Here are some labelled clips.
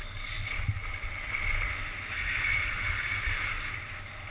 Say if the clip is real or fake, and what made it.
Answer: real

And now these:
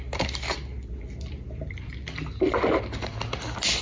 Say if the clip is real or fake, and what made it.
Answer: real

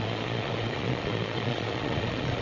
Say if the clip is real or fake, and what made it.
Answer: fake, vocoder, Vocos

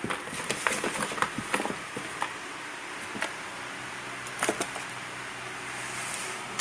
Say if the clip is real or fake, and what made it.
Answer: real